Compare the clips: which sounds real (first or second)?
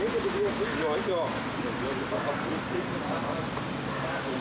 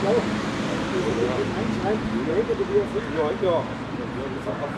first